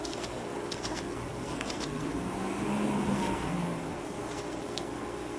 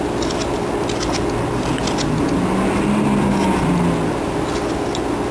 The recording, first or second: second